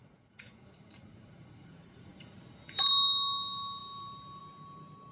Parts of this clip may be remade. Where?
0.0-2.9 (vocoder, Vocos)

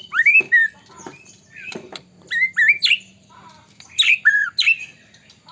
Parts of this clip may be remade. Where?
none

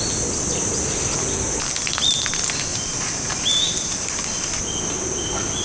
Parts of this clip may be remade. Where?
2.7-4.2 (vocoder, BigVGAN v2)

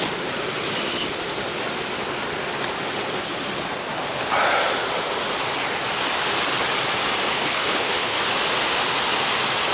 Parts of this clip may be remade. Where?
7.3-8.2 (codec, HILCodec)

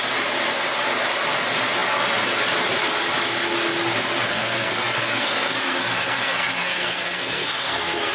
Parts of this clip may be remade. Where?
4.3-8.1 (codec, SNAC)